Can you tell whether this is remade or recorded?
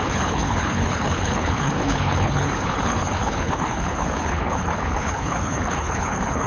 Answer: remade